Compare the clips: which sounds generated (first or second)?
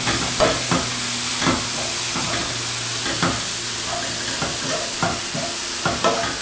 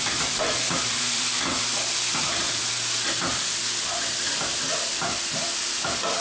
second